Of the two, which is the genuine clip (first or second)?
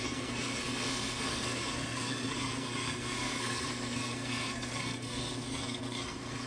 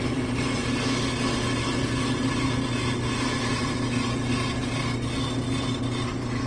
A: second